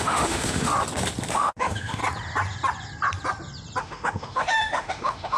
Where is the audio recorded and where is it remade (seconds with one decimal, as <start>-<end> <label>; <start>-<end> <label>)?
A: 0.0-0.7 remade; 0.7-1.3 recorded; 1.3-2.0 remade; 2.0-3.8 recorded; 3.8-5.4 remade

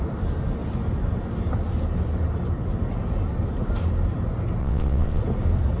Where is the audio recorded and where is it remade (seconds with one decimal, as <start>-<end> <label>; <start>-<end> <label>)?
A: 0.0-4.6 recorded; 4.6-5.2 remade; 5.2-5.8 recorded

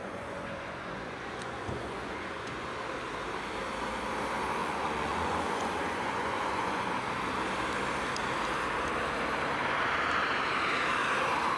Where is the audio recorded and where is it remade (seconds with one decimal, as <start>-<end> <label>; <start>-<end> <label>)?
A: 0.0-2.7 remade; 2.7-4.6 recorded; 4.6-6.9 remade; 6.9-11.6 recorded

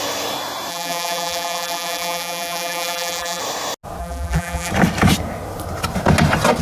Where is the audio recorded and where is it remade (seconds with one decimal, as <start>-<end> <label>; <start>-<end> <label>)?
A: 0.0-0.7 recorded; 0.7-3.4 remade; 3.4-4.0 recorded; 4.0-4.7 remade; 4.7-6.6 recorded

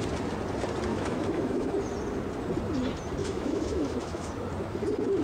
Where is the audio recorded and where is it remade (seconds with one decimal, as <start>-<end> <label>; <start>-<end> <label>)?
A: 0.0-0.9 recorded; 0.9-1.7 remade; 1.7-3.2 recorded; 3.2-4.3 remade; 4.3-5.2 recorded

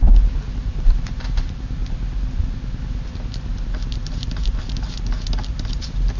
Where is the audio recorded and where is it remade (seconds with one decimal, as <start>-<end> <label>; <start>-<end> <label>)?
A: 0.0-1.8 remade; 1.8-5.5 recorded; 5.5-6.2 remade

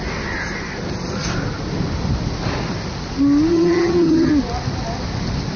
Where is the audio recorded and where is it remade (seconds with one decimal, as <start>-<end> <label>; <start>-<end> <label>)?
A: 0.0-3.5 recorded; 3.5-4.3 remade; 4.3-5.6 recorded

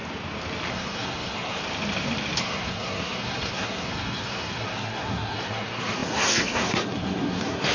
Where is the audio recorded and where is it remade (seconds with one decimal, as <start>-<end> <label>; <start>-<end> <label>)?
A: 0.0-0.7 recorded; 0.7-1.6 remade; 1.6-2.4 recorded; 2.4-7.7 remade